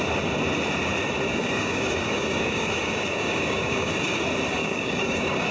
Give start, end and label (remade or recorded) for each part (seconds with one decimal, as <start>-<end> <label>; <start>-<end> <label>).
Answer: 0.0-1.3 recorded; 1.3-3.9 remade; 3.9-4.6 recorded; 4.6-5.5 remade

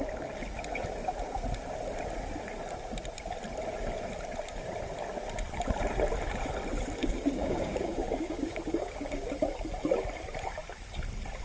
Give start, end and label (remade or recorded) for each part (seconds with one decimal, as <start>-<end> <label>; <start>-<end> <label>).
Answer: 0.0-7.0 recorded; 7.0-9.3 remade; 9.3-11.4 recorded

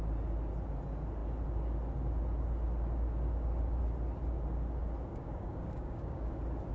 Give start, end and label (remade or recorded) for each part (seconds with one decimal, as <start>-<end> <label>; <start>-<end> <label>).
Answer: 0.0-5.1 recorded; 5.1-6.3 remade; 6.3-6.7 recorded

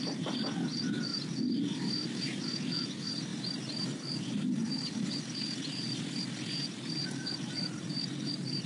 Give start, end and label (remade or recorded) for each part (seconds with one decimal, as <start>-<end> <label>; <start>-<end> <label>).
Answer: 0.0-8.7 recorded

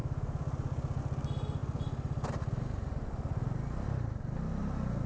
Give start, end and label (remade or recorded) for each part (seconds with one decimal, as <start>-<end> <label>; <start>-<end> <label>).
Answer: 0.0-5.1 recorded

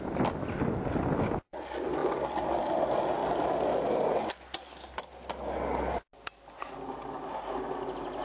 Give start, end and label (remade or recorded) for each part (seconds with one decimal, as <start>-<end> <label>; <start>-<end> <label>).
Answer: 0.0-8.2 recorded